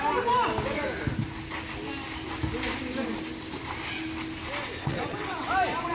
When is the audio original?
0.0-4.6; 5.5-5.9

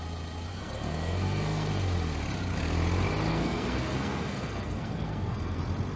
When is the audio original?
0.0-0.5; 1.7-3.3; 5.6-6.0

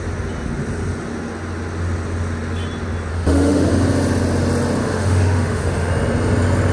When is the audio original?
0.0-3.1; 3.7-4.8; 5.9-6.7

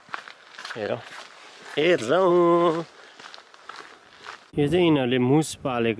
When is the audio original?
0.0-0.6; 1.2-1.7; 2.3-6.0

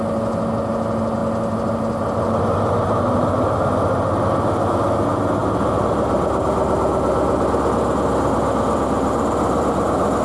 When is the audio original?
0.0-10.2